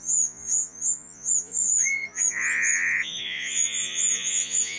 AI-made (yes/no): yes